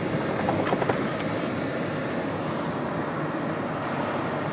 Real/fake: real